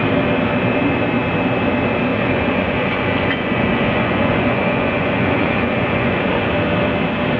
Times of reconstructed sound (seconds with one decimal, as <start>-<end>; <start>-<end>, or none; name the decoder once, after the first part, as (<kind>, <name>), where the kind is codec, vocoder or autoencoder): 2.1-6.5 (vocoder, Vocos)